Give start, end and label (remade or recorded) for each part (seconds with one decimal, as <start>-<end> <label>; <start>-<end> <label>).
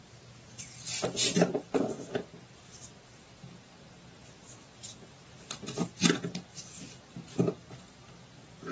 0.0-8.7 remade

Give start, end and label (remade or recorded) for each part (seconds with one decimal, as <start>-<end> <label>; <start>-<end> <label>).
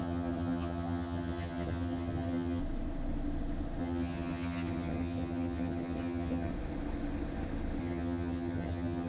0.0-2.6 remade; 2.6-3.8 recorded; 3.8-6.5 remade; 6.5-7.8 recorded; 7.8-9.1 remade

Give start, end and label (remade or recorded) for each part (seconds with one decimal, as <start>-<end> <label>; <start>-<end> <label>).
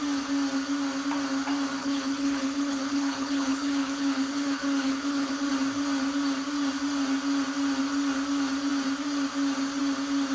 0.0-1.8 recorded; 1.8-5.5 remade; 5.5-10.3 recorded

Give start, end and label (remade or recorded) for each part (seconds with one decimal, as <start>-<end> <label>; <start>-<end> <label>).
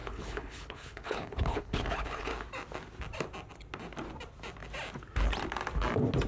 0.0-2.3 remade; 2.3-6.3 recorded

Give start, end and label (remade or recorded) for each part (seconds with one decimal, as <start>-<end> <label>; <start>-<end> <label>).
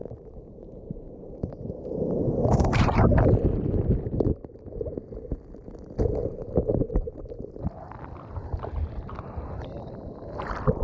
0.0-4.5 remade; 4.5-6.2 recorded; 6.2-7.3 remade; 7.3-10.8 recorded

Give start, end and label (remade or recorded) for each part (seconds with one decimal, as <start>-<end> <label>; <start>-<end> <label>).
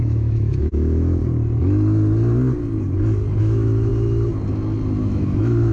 0.0-1.2 remade; 1.2-3.4 recorded; 3.4-3.9 remade; 3.9-5.0 recorded; 5.0-5.7 remade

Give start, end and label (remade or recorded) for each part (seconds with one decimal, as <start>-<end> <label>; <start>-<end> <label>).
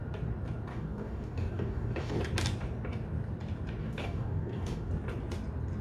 0.0-0.7 recorded; 0.7-2.2 remade; 2.2-3.8 recorded; 3.8-4.9 remade; 4.9-5.8 recorded